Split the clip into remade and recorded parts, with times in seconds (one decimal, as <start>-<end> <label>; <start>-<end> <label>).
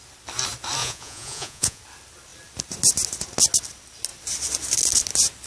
0.0-0.8 recorded; 0.8-1.8 remade; 1.8-5.5 recorded